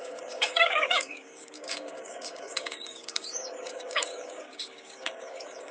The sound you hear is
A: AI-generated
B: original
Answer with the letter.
A